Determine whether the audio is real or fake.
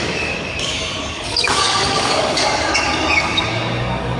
fake